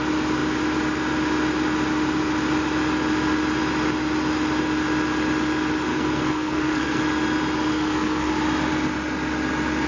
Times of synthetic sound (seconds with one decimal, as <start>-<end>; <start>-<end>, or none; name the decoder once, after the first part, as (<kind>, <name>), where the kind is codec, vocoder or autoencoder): 5.9-7.0 (codec, SNAC); 7.7-8.3

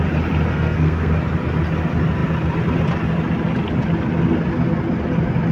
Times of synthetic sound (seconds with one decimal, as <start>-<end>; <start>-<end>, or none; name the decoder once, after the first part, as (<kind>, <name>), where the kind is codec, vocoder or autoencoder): 0.5-1.1 (codec, SNAC)

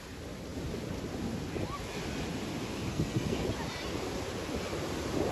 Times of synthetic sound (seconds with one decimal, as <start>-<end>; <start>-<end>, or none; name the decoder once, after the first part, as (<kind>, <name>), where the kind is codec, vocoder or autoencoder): 2.9-3.5 (codec, SNAC)

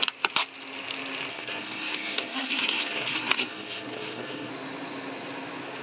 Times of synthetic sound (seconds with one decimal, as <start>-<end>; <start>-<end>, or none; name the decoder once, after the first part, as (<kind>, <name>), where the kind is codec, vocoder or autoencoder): 1.3-4.5 (codec, SNAC)

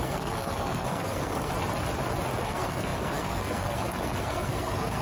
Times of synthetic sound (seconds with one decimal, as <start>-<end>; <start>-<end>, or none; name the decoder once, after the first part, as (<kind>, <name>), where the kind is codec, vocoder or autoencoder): 0.0-1.5 (codec, SNAC); 2.4-5.0

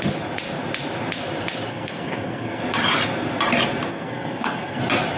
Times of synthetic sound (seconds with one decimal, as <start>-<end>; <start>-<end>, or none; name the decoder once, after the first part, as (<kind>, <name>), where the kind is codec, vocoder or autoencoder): 1.7-2.6 (codec, SNAC); 3.9-4.8

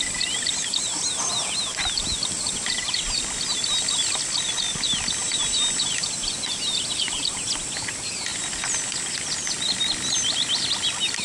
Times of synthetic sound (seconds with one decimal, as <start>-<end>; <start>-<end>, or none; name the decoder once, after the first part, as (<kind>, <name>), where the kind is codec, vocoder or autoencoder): none

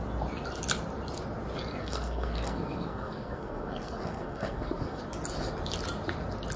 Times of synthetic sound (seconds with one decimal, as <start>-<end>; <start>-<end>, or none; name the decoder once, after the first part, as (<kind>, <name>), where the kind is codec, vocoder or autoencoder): 1.8-5.0 (codec, SNAC)